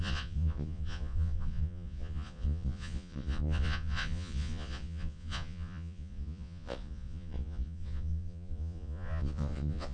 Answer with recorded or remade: remade